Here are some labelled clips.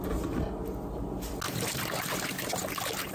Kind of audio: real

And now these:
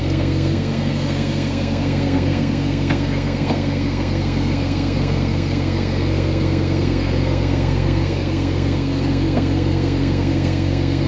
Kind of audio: fake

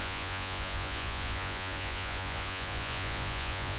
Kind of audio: fake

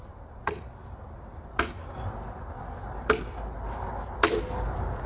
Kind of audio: real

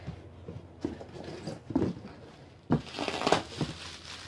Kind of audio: real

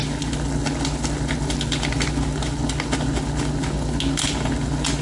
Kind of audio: real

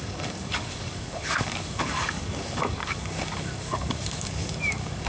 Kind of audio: fake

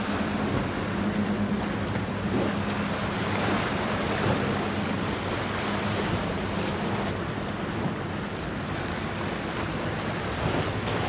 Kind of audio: real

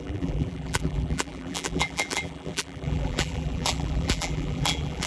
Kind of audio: fake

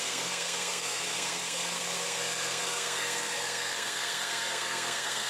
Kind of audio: fake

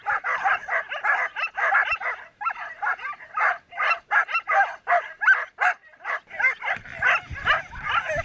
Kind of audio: real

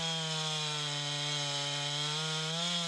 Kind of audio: real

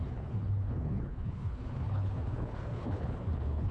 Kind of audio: fake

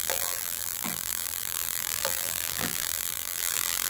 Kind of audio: fake